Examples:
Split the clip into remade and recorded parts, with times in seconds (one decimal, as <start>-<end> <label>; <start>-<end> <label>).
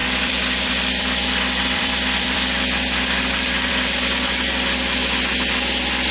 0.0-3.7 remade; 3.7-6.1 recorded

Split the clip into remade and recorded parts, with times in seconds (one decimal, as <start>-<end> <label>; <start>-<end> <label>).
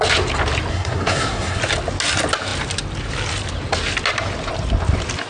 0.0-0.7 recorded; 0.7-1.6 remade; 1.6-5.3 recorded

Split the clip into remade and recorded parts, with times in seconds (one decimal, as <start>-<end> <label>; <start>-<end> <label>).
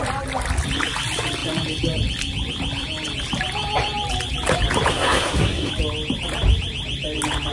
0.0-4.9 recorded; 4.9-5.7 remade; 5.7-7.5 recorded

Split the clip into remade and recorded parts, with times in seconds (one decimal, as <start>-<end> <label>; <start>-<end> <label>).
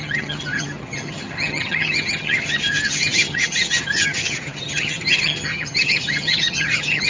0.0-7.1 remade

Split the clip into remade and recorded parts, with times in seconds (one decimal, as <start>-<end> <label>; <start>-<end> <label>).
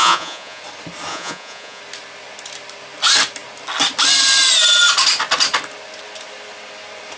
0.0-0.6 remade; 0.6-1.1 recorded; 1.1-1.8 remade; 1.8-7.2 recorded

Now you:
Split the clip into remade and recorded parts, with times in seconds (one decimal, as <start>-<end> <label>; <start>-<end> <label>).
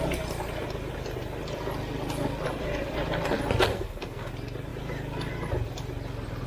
0.0-3.7 recorded; 3.7-4.3 remade; 4.3-6.5 recorded